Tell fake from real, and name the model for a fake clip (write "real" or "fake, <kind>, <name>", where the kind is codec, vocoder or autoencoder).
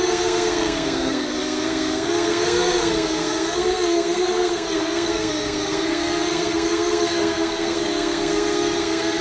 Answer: fake, codec, SNAC